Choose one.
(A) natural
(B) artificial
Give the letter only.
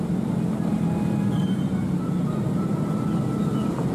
A